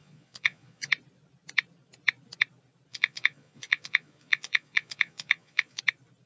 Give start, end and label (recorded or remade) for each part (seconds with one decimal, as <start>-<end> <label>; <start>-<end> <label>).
0.0-0.9 remade; 0.9-2.9 recorded; 2.9-5.8 remade; 5.8-6.3 recorded

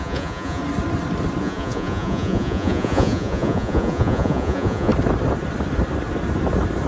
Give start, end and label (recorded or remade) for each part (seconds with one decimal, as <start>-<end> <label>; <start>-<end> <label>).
0.0-0.6 remade; 0.6-1.4 recorded; 1.4-4.9 remade; 4.9-6.9 recorded

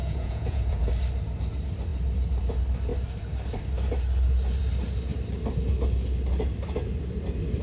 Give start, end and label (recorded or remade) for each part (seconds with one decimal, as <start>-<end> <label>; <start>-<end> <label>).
0.0-0.9 remade; 0.9-7.6 recorded

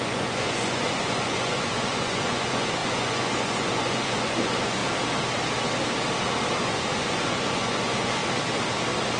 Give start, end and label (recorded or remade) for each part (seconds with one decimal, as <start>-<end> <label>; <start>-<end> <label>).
0.0-4.8 remade; 4.8-6.6 recorded; 6.6-8.2 remade; 8.2-9.2 recorded

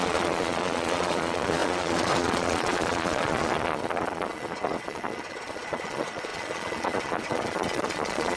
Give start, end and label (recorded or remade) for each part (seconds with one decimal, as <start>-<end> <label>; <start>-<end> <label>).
0.0-8.4 remade

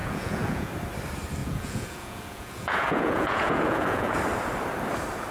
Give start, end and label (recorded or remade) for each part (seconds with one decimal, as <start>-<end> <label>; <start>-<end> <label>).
0.0-0.7 remade; 0.7-1.4 recorded; 1.4-4.2 remade; 4.2-5.3 recorded

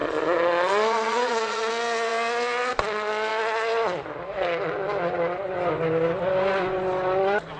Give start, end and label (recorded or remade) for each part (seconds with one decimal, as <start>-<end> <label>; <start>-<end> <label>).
0.0-1.7 remade; 1.7-7.6 recorded